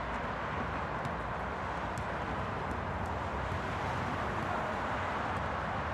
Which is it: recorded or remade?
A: recorded